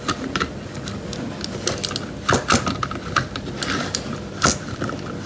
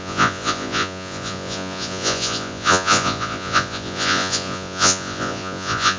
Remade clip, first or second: second